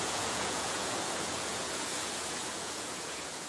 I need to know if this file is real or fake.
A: fake